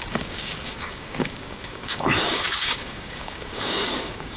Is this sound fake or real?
fake